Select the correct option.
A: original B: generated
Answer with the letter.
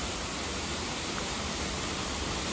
B